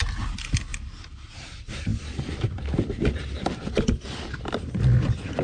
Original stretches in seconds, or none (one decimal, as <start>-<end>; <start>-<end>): 0.0-5.4